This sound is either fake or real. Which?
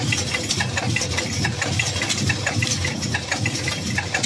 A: real